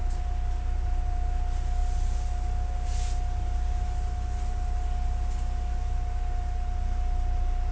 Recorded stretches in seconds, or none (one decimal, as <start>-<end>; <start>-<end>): 0.0-7.7